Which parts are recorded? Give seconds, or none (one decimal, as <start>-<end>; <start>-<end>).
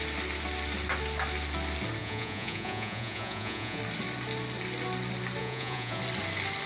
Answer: 0.0-2.0; 3.8-5.4; 6.0-6.7